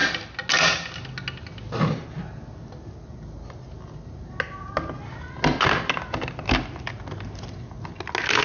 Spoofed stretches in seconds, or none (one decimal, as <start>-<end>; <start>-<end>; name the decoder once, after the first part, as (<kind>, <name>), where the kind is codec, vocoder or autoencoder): none